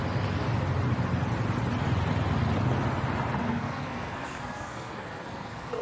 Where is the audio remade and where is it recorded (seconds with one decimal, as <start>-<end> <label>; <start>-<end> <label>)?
0.0-3.4 recorded; 3.4-5.8 remade